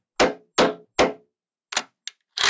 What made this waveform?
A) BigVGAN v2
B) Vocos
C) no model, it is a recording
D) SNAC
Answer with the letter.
C